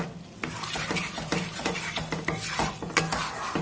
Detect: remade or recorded recorded